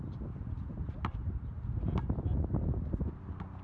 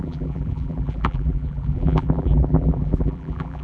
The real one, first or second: first